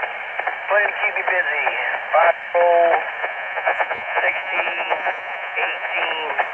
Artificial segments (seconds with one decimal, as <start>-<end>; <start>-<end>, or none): 3.2-6.0